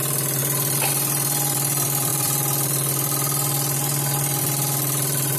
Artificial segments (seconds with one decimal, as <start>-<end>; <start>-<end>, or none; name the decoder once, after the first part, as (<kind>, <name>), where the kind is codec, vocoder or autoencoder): 0.0-5.4 (vocoder, BigVGAN v2)